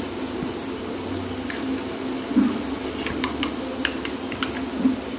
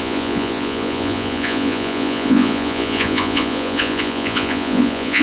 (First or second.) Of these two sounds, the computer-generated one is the second